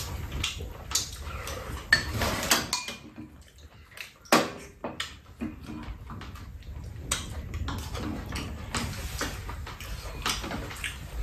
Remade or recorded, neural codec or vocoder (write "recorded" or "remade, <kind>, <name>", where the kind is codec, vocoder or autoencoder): recorded